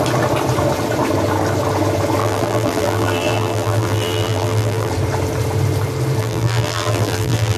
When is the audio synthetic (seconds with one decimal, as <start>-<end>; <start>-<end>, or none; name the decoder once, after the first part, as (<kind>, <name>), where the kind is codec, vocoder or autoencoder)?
2.2-4.9 (vocoder, BigVGAN v2); 6.2-7.6